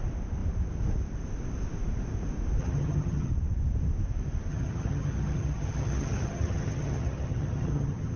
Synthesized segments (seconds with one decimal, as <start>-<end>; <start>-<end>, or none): 2.6-3.3; 4.5-8.2